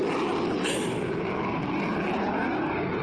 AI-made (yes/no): no